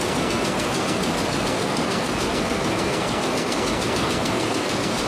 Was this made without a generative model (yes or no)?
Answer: no